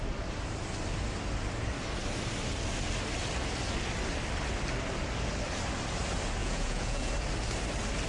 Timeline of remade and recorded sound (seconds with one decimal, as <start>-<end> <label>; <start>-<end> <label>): 0.0-6.4 recorded; 6.4-7.1 remade; 7.1-8.1 recorded